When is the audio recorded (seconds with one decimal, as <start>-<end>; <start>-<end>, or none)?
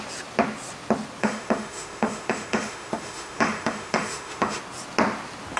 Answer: 0.0-1.2; 4.6-5.6